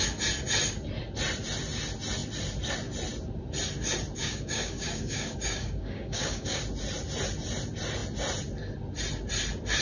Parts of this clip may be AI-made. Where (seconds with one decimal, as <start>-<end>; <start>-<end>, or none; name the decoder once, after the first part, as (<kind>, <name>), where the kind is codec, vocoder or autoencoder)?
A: 4.2-6.6 (codec, DAC)